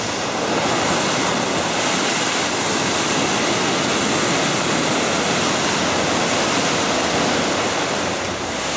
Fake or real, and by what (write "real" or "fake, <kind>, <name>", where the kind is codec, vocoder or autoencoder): real